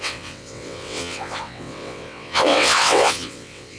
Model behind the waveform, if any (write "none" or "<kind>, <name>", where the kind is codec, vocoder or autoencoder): vocoder, WaveNeXt